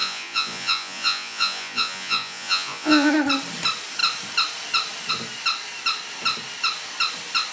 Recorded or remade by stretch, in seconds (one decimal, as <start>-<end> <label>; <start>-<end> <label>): 0.0-3.1 remade; 3.1-7.5 recorded